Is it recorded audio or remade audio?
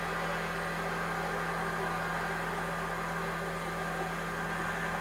recorded